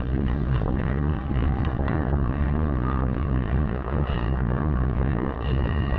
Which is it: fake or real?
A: fake